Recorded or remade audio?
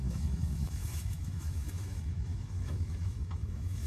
remade